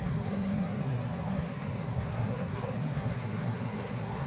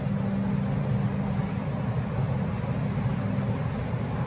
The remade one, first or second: first